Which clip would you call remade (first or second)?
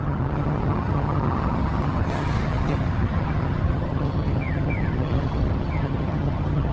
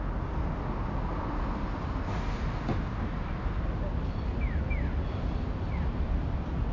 first